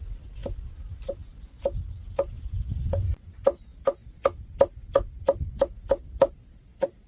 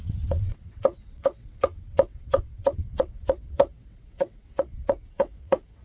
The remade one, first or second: second